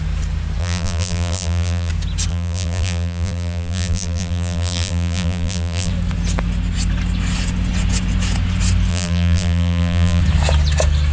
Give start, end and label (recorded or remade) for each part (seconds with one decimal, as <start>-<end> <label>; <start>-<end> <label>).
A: 0.0-0.6 recorded; 0.6-1.9 remade; 1.9-2.3 recorded; 2.3-5.9 remade; 5.9-8.9 recorded; 8.9-10.2 remade; 10.2-11.1 recorded